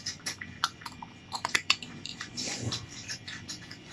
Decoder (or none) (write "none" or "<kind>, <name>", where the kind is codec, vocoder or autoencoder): vocoder, Vocos